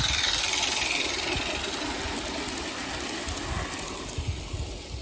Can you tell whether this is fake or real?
real